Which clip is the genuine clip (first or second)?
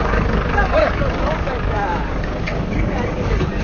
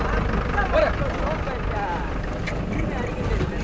second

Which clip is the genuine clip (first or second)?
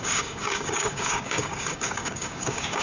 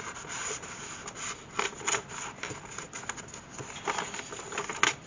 second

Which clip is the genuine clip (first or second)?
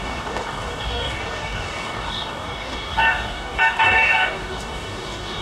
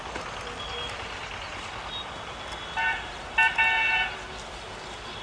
second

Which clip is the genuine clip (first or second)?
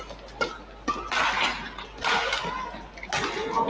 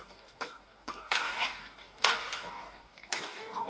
first